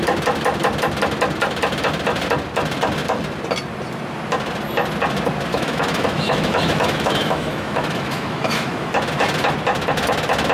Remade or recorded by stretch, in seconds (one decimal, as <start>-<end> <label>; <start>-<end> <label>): 0.0-5.5 recorded; 5.5-8.9 remade; 8.9-10.5 recorded

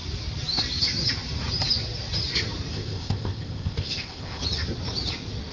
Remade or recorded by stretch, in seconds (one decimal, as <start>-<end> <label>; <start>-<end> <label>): 0.0-2.7 recorded; 2.7-4.4 remade; 4.4-5.5 recorded

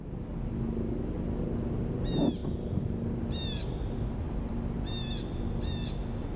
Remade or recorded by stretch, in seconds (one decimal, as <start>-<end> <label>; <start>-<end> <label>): 0.0-6.4 recorded